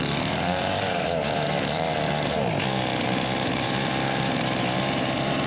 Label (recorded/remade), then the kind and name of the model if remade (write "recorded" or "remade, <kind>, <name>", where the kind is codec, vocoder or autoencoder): remade, vocoder, BigVGAN v2